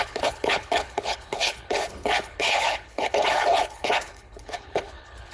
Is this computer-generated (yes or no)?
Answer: yes